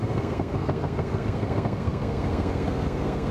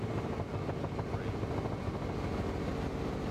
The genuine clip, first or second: second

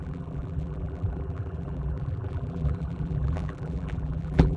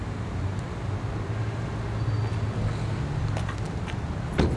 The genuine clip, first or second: second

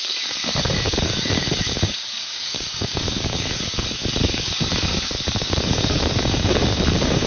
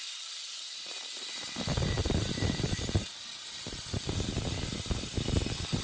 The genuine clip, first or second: second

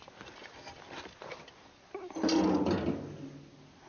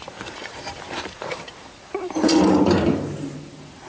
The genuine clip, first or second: first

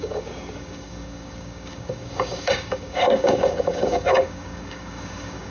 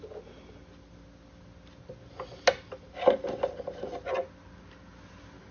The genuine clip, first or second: second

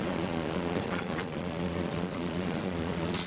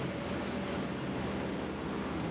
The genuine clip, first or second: second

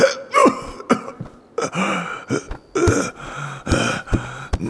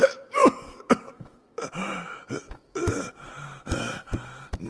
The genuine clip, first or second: first